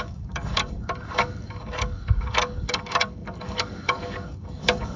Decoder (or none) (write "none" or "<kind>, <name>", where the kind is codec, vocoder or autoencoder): codec, DAC